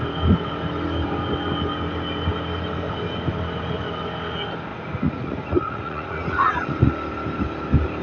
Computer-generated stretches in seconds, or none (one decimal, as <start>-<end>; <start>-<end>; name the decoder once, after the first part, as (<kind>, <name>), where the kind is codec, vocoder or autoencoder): 4.7-6.9 (vocoder, Vocos)